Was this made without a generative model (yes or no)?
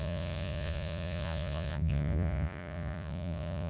no